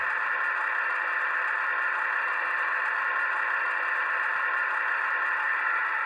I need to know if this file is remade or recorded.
recorded